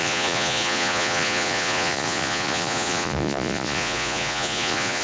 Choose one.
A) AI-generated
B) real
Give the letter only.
A